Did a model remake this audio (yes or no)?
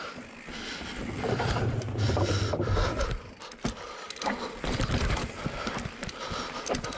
yes